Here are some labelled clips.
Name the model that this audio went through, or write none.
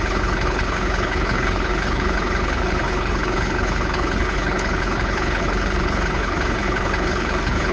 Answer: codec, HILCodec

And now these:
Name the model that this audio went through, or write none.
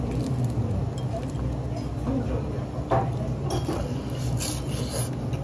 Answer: none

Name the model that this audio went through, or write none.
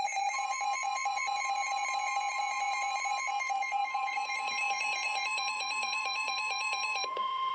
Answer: vocoder, Vocos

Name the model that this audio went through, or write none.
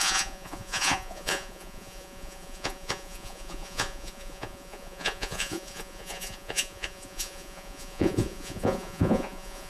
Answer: vocoder, Vocos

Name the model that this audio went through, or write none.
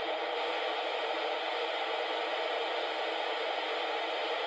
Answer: vocoder, BigVGAN v2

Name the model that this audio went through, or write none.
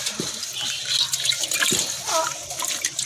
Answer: none